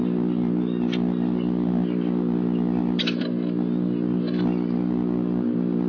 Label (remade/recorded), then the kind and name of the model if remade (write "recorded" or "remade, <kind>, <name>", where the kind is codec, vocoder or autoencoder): recorded